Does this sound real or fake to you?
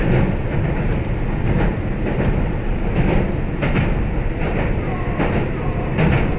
real